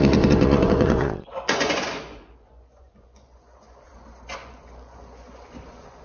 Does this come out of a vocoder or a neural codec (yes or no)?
yes